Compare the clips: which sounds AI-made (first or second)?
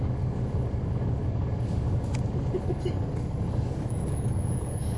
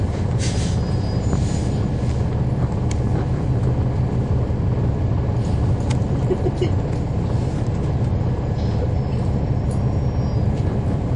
first